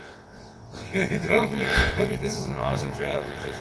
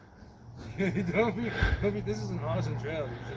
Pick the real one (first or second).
second